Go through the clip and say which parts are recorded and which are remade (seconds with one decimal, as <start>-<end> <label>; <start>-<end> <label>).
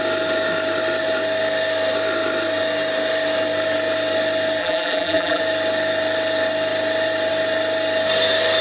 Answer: 0.0-4.6 recorded; 4.6-5.4 remade; 5.4-8.6 recorded